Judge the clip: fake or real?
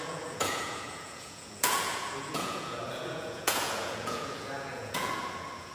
fake